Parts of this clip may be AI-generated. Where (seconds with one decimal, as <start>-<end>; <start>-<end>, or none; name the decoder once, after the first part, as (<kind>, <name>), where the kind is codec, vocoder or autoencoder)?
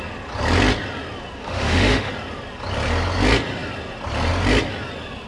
1.4-2.1 (autoencoder, DAC-VAE)